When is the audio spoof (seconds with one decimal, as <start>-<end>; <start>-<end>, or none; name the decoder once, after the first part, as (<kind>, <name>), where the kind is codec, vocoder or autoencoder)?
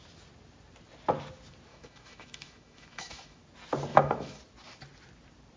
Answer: 1.7-3.4 (autoencoder, DAC-VAE); 3.9-4.4